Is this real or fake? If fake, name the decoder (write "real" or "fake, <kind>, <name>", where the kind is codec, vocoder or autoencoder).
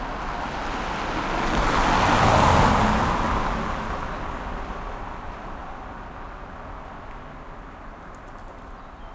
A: real